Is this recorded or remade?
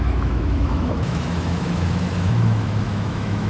remade